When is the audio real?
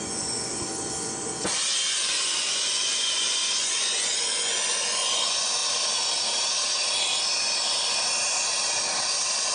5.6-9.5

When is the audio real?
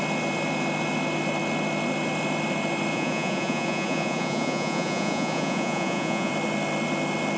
0.0-2.9; 6.3-7.4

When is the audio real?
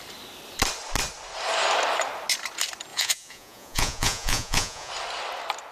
0.0-2.9; 4.9-5.7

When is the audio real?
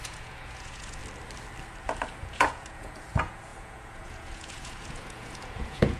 1.0-2.2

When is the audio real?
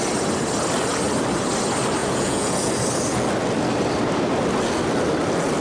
0.0-2.0; 2.7-5.6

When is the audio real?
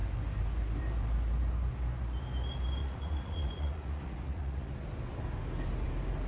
0.0-2.8; 4.7-6.3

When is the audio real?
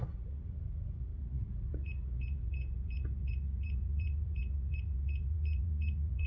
none